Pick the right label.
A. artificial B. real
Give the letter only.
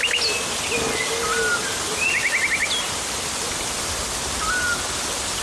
B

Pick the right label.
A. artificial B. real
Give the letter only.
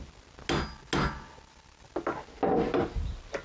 B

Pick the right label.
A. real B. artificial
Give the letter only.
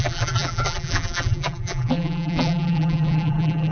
B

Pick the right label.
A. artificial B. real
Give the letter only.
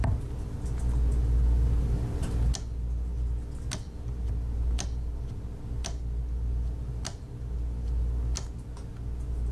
B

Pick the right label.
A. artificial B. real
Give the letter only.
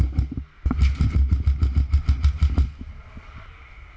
B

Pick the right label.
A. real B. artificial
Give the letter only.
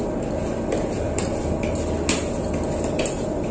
A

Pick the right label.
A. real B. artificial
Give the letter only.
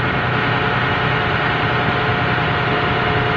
A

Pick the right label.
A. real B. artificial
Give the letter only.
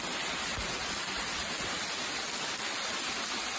A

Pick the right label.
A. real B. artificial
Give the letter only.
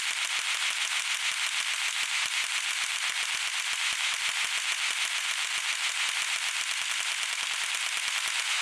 A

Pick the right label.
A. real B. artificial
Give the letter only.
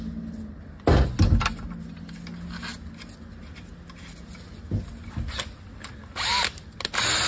A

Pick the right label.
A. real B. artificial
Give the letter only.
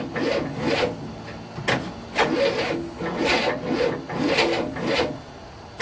A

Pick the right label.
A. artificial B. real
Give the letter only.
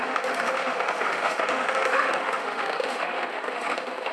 A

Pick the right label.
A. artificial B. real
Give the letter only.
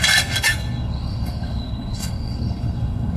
A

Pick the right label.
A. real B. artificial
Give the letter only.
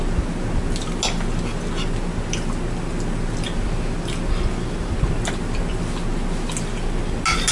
A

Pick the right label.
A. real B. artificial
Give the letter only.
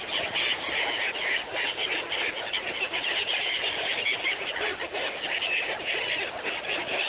A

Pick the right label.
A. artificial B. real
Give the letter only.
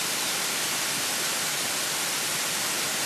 B